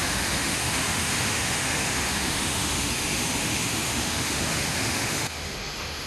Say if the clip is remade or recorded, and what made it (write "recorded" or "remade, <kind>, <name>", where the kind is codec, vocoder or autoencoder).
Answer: remade, autoencoder, DAC-VAE